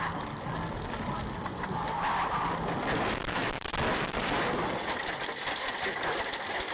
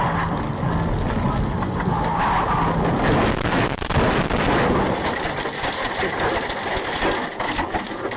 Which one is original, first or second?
second